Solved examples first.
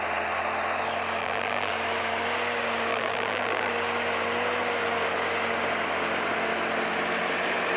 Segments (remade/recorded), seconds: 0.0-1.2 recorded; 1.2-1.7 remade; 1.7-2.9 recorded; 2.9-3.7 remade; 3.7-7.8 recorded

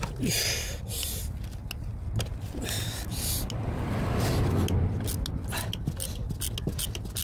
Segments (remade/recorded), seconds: 0.0-7.2 recorded

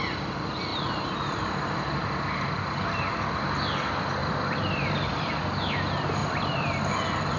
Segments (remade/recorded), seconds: 0.0-0.7 recorded; 0.7-1.9 remade; 1.9-4.2 recorded; 4.2-5.3 remade; 5.3-6.2 recorded; 6.2-6.9 remade; 6.9-7.4 recorded

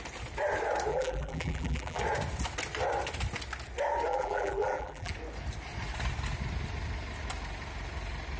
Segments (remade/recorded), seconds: 0.0-0.9 recorded; 0.9-2.0 remade; 2.0-4.1 recorded; 4.1-5.1 remade; 5.1-8.4 recorded

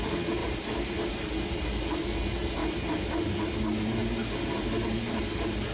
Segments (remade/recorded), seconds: 0.0-0.4 recorded; 0.4-1.1 remade; 1.1-2.6 recorded; 2.6-3.5 remade; 3.5-5.7 recorded